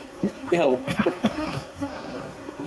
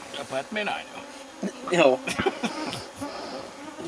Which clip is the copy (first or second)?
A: first